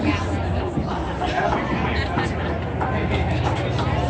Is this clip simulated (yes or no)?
no